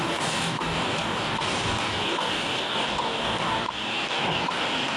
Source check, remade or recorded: remade